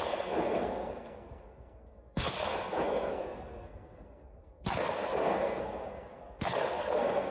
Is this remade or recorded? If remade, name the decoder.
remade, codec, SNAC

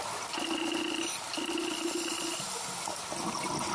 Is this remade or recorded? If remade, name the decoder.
recorded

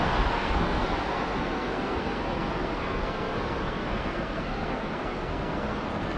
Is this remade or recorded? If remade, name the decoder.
remade, codec, SNAC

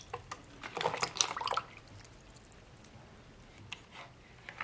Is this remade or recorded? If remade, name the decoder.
recorded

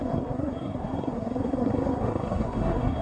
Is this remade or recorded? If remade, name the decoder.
remade, codec, SNAC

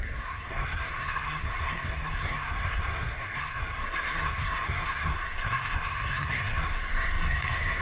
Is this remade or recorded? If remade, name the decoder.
remade, codec, SNAC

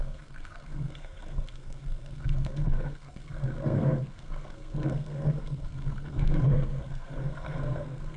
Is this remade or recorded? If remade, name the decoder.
remade, codec, SNAC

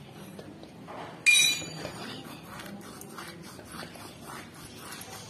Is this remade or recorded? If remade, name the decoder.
recorded